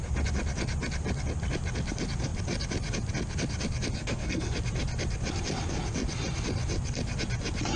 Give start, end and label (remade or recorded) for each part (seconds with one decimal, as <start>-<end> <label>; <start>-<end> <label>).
0.0-4.0 recorded; 4.0-4.5 remade; 4.5-7.8 recorded